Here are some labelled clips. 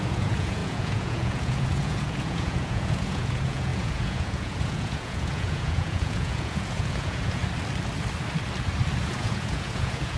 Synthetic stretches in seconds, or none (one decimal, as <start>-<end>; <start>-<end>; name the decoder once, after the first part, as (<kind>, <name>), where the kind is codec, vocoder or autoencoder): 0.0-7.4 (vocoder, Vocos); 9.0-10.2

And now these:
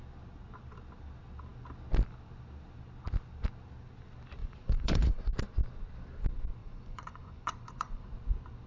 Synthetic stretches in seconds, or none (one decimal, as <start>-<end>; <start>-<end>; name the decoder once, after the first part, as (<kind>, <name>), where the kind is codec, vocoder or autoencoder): 4.4-5.3 (vocoder, Vocos); 6.6-8.1

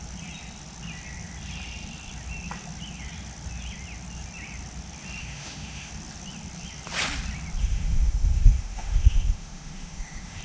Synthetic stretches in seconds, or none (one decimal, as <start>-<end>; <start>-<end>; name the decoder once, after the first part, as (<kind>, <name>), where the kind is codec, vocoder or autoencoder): 5.2-5.9 (autoencoder, DAC-VAE); 7.6-10.4

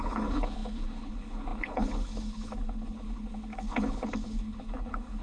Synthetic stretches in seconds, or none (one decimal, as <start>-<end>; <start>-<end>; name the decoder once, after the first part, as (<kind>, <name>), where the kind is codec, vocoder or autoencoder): 0.0-5.2 (codec, HILCodec)

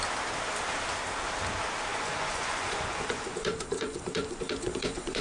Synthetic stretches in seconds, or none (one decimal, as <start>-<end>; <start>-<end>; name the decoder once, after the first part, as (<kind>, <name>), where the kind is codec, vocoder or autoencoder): 1.9-5.2 (vocoder, Vocos)